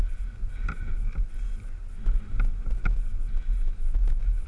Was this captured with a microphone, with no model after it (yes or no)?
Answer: yes